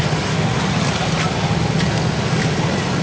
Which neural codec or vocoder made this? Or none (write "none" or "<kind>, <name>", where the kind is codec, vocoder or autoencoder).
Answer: none